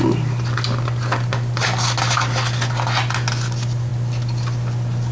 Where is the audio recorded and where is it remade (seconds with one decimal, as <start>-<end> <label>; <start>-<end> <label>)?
0.0-5.1 recorded